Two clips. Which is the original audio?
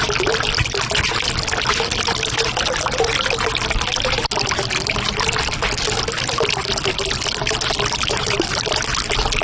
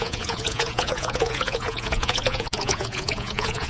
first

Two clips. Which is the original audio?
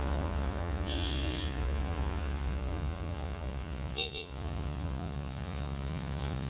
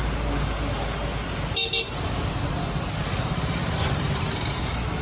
second